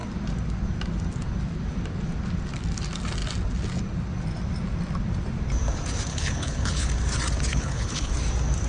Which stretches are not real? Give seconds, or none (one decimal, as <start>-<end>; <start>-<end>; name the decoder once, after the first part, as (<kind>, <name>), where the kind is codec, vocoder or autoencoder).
6.1-6.9 (codec, HILCodec); 7.5-8.1